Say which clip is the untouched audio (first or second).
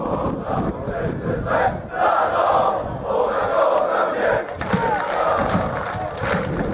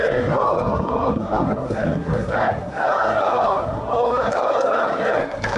first